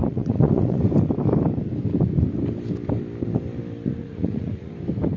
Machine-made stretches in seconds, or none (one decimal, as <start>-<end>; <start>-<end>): 0.0-0.8; 4.0-4.7